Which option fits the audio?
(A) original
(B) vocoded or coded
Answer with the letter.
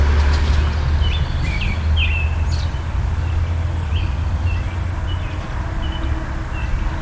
A